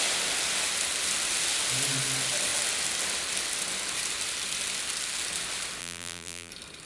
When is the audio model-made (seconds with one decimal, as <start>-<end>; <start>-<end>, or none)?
5.8-6.5